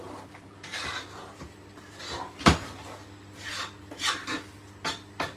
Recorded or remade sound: recorded